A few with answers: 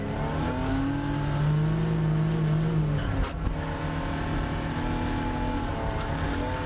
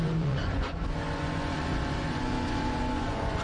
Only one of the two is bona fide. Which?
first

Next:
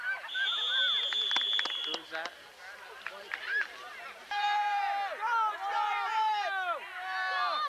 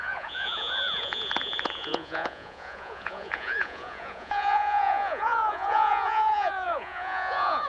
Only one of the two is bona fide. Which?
first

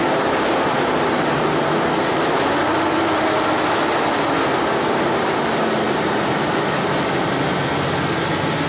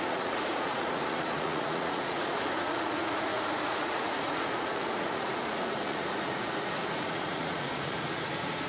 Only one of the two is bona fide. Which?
first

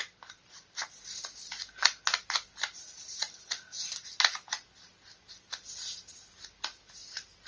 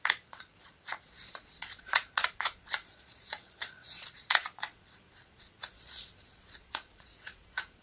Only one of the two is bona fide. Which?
first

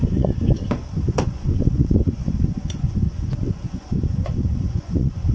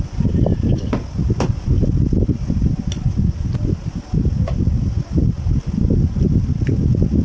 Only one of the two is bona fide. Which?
second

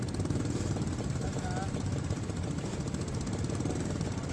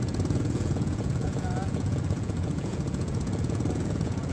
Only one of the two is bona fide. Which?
first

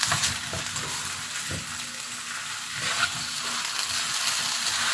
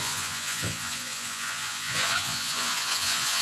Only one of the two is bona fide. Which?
first